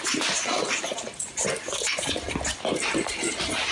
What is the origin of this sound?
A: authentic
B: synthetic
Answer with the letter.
A